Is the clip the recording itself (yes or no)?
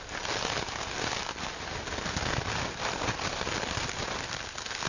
yes